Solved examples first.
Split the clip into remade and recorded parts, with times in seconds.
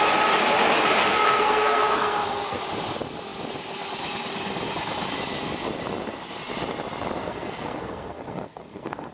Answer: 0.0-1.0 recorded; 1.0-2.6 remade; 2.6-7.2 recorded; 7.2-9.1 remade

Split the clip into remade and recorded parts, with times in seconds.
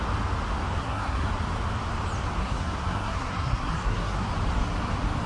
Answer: 0.0-0.8 recorded; 0.8-1.3 remade; 1.3-2.4 recorded; 2.4-4.3 remade; 4.3-5.3 recorded